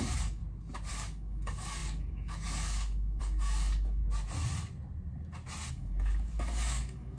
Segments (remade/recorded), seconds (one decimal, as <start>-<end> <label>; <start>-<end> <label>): 0.0-0.4 remade; 0.4-0.9 recorded; 0.9-4.0 remade; 4.0-5.7 recorded; 5.7-7.2 remade